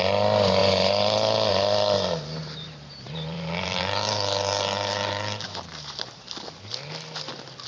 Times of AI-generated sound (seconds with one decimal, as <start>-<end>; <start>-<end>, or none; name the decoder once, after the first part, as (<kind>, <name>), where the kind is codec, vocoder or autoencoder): 2.4-6.3 (vocoder, BigVGAN v2)